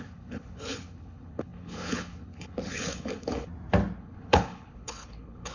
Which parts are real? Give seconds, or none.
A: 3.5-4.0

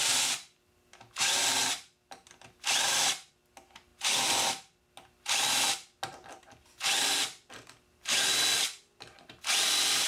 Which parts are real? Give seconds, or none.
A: 0.0-10.1